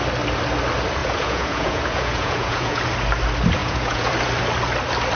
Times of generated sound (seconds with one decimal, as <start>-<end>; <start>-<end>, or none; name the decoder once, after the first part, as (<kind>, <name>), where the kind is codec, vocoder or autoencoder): 1.0-2.8 (vocoder, Vocos); 3.6-4.1